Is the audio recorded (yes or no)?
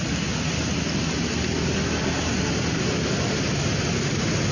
yes